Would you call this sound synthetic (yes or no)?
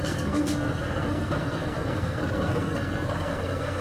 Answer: yes